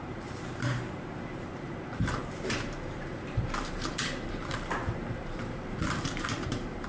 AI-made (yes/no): yes